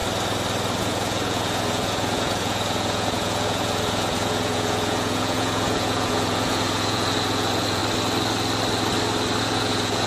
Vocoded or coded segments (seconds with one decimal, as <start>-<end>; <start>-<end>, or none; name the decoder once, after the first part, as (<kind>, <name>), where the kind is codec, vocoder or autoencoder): 0.8-7.8 (vocoder, Vocos); 9.4-10.1

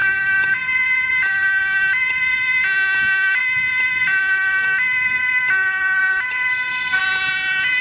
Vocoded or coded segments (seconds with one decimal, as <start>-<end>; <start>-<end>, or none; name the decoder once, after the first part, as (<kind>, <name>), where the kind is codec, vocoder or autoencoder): 6.5-7.0 (codec, SNAC)

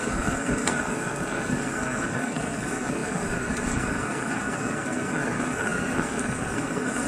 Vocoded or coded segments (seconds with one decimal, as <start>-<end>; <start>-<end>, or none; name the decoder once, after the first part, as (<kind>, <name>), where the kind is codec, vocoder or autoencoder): 0.0-7.1 (codec, SNAC)

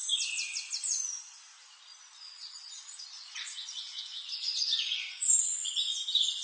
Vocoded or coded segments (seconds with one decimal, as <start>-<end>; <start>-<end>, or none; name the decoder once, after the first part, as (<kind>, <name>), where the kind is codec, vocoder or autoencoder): 1.9-5.7 (vocoder, Vocos)

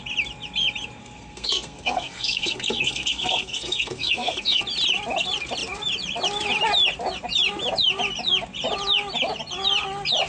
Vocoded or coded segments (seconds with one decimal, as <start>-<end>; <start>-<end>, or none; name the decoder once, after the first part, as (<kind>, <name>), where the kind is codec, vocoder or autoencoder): 1.0-4.6 (codec, SNAC)

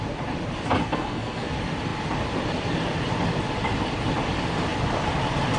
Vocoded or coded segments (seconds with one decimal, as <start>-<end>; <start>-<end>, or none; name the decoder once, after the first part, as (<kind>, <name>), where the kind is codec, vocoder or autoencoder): 0.8-1.5 (codec, SNAC)

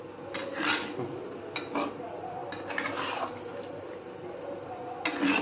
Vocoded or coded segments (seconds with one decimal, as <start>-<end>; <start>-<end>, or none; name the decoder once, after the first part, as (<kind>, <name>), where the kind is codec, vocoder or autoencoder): none

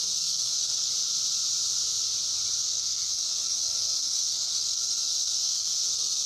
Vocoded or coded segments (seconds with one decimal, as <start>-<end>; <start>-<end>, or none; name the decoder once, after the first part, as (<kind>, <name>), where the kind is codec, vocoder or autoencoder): 0.0-0.9 (codec, SNAC); 2.6-6.3